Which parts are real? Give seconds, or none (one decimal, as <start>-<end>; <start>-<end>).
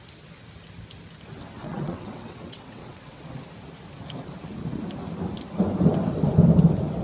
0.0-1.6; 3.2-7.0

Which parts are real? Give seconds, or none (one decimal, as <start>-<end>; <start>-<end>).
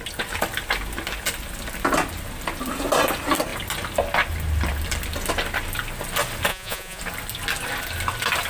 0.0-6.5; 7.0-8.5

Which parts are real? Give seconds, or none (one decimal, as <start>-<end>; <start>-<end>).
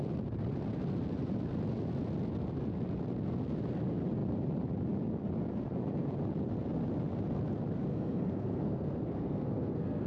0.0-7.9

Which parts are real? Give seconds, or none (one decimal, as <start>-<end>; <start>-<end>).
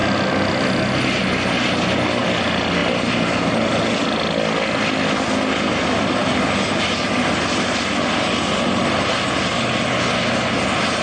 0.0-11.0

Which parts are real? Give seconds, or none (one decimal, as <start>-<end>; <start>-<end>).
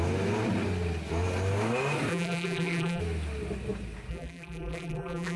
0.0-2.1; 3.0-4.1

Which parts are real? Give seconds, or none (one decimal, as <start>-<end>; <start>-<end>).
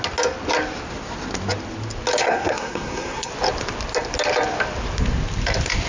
0.0-2.2; 3.3-5.9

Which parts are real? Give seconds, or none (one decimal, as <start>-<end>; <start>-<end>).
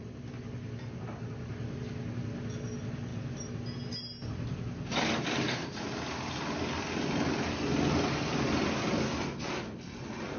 0.0-10.4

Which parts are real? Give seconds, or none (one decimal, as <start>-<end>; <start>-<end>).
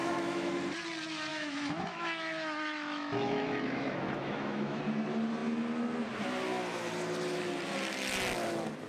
0.5-1.3; 4.8-8.9